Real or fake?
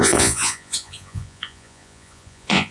fake